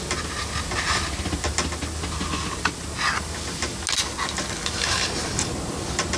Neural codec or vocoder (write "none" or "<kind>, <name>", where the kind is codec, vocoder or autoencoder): none